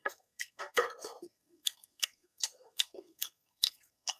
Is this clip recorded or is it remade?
remade